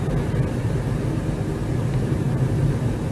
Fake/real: real